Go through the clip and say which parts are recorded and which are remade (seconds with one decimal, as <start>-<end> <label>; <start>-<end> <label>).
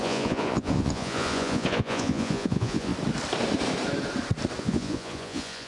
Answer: 0.0-2.9 remade; 2.9-4.6 recorded; 4.6-5.7 remade